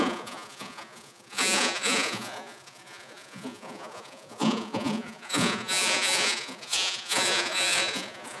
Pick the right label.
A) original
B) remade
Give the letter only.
B